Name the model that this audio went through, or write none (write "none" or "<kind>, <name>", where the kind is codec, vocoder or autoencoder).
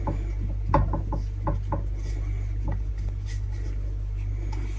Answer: none